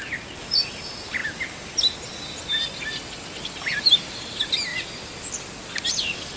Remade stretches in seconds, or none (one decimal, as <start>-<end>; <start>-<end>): 4.7-5.3